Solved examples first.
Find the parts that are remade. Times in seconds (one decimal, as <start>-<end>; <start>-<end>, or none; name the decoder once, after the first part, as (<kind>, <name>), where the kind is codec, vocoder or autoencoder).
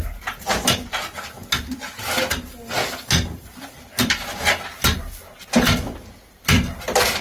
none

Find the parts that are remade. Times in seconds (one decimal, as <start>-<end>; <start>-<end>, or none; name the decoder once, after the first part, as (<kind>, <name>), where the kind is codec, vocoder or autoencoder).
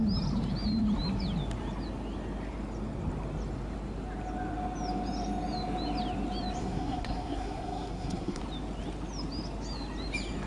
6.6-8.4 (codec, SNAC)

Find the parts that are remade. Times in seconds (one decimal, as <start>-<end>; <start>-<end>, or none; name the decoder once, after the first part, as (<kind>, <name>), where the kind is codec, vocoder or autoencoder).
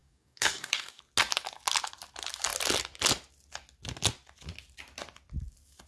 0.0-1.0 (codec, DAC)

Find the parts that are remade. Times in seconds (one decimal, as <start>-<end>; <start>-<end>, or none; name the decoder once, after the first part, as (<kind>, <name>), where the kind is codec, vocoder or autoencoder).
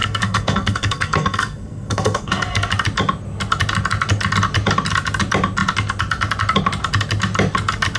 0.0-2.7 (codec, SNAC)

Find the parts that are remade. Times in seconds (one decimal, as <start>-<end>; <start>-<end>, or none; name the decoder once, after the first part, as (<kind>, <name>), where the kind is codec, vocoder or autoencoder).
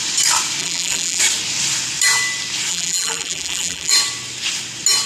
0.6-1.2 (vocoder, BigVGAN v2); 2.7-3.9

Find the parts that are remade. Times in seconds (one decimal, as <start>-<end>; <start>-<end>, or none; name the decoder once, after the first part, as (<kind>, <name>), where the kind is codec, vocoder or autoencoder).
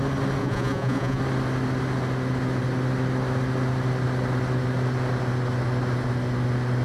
0.4-1.2 (vocoder, Vocos)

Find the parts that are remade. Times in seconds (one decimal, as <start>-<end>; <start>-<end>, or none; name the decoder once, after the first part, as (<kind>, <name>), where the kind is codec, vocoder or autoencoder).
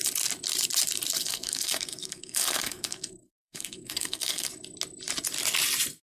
1.1-4.5 (codec, SNAC)